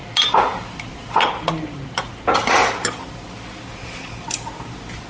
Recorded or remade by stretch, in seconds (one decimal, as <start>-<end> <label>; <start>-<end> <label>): 0.0-5.1 recorded